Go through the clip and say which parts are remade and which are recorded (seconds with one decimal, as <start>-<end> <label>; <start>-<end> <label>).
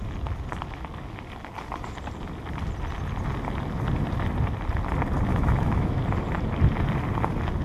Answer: 0.0-5.3 recorded; 5.3-6.0 remade; 6.0-7.6 recorded